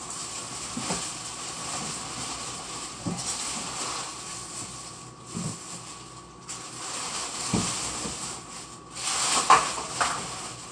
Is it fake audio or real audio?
real